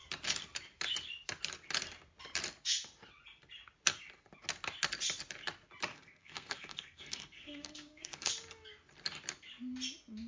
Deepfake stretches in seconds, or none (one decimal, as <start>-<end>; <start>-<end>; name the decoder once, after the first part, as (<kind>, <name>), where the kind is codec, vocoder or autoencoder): 5.9-8.3 (codec, SNAC)